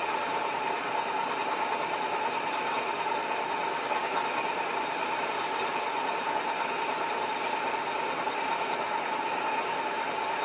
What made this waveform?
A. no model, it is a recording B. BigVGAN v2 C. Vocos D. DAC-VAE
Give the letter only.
A